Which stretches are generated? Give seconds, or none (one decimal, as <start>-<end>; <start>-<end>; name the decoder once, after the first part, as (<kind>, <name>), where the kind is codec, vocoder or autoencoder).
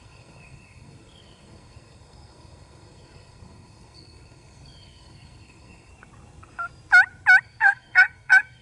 0.0-5.9 (codec, SNAC); 7.4-8.6